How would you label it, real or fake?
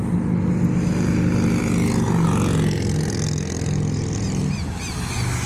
real